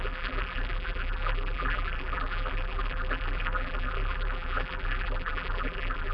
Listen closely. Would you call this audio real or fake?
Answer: fake